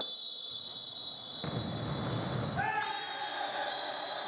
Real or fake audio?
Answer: real